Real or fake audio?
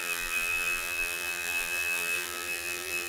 fake